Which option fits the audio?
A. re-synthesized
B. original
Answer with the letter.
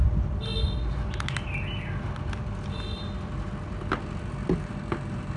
B